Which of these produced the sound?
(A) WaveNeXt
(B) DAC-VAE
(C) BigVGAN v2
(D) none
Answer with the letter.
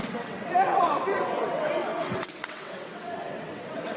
A